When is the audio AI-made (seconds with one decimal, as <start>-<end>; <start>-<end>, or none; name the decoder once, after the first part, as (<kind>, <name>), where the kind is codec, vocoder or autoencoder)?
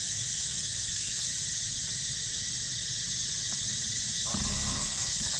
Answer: 0.0-1.3 (codec, SNAC); 4.5-5.4